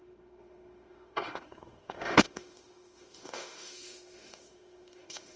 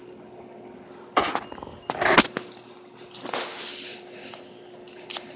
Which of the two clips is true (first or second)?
second